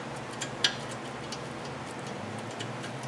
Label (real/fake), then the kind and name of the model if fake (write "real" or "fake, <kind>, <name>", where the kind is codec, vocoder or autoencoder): real